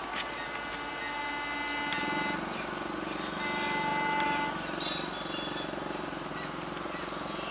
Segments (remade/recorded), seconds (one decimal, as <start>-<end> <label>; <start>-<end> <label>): 0.0-7.5 recorded